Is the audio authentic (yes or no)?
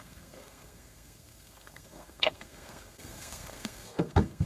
no